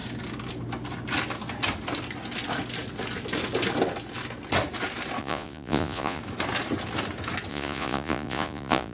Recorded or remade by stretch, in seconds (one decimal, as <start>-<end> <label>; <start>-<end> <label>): 0.0-5.2 recorded; 5.2-6.2 remade; 6.2-7.5 recorded; 7.5-8.9 remade